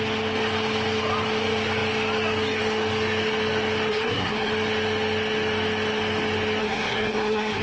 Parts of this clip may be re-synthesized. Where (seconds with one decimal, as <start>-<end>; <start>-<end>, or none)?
3.9-4.5; 6.6-7.6